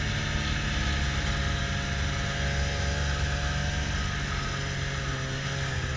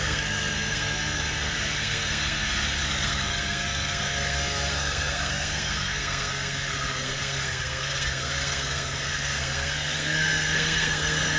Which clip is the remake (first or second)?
second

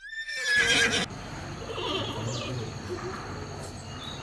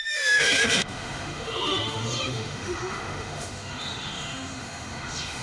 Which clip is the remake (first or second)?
second